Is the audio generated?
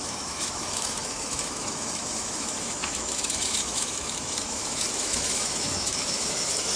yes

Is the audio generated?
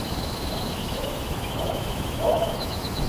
yes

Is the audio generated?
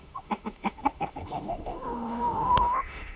yes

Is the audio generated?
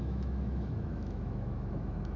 yes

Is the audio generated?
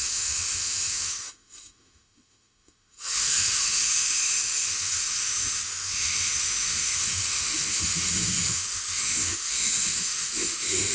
yes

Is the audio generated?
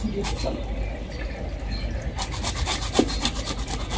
no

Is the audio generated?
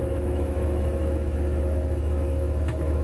yes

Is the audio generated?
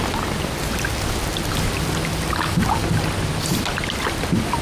no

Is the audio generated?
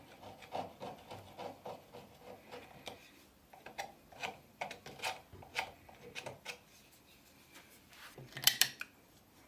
no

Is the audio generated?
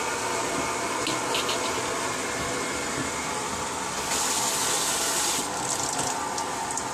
no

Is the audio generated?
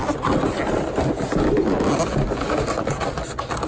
no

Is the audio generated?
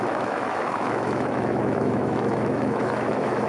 yes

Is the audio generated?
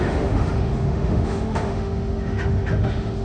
yes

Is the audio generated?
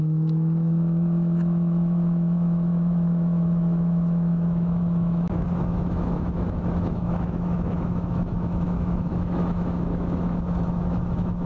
yes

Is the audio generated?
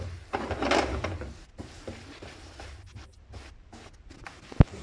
no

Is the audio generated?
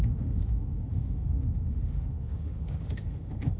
yes